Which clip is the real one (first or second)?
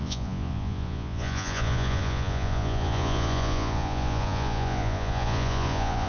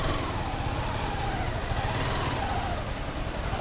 second